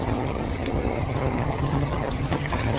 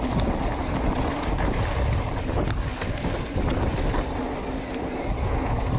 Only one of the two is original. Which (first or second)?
second